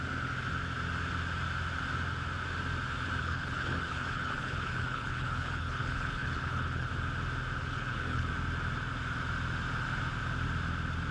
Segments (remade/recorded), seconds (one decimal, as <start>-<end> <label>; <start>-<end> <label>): 0.0-3.2 recorded; 3.2-6.9 remade; 6.9-7.6 recorded; 7.6-8.3 remade; 8.3-11.1 recorded